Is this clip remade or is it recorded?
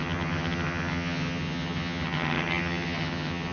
remade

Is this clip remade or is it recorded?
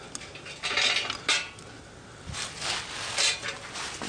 recorded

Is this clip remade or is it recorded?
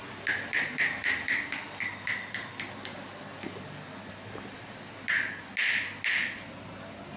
recorded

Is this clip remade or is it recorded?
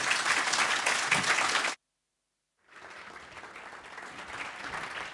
recorded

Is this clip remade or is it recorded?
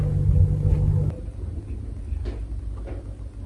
recorded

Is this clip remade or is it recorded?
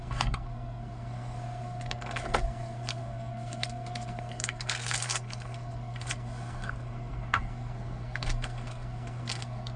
remade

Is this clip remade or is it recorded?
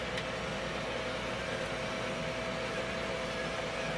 recorded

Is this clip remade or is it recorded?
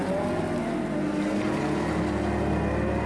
recorded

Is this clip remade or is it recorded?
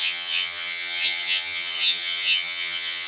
remade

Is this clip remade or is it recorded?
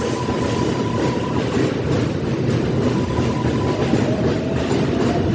recorded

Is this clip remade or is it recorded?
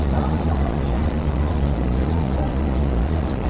remade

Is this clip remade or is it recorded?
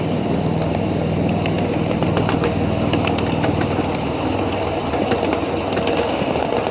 recorded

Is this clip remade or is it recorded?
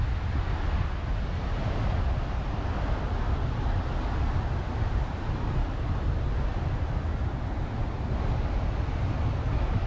recorded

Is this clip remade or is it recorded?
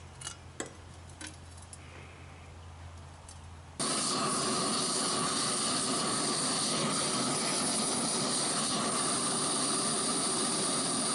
recorded